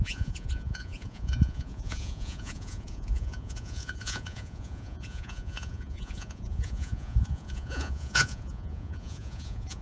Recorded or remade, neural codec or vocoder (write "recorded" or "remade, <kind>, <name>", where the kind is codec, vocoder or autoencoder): remade, vocoder, Vocos